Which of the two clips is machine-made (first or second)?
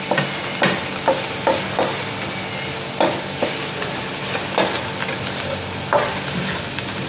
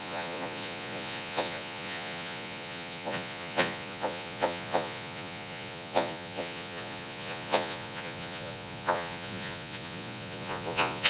second